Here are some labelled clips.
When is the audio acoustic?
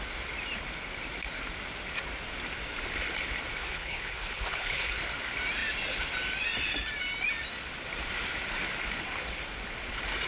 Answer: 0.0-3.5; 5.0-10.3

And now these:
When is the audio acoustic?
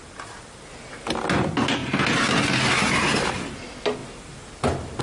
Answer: 0.0-5.0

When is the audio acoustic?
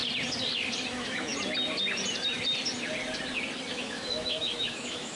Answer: 0.0-0.9; 1.3-3.7